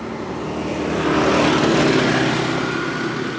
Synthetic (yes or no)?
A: no